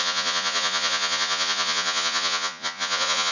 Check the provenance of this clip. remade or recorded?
remade